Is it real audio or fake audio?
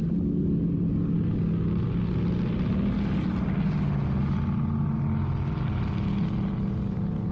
real